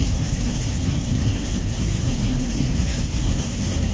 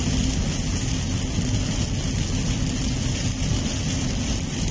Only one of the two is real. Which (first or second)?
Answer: second